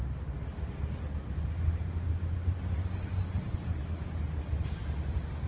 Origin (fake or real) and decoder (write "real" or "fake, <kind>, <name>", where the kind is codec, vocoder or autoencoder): real